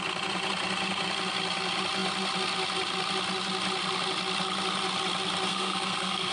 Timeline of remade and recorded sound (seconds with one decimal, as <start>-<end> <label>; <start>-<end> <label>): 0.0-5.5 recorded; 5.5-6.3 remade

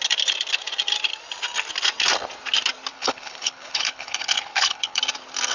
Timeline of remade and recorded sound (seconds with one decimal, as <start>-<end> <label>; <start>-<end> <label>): 0.0-2.9 recorded; 2.9-5.0 remade; 5.0-5.5 recorded

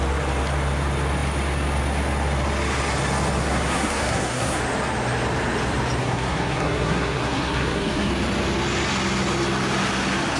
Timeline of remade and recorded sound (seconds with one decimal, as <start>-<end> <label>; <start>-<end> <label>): 0.0-3.4 recorded; 3.4-4.6 remade; 4.6-6.0 recorded; 6.0-8.1 remade; 8.1-10.4 recorded